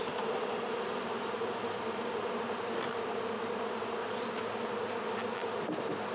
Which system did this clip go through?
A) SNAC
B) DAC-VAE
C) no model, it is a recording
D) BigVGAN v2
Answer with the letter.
C